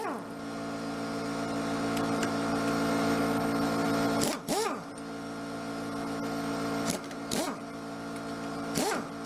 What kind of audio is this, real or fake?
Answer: real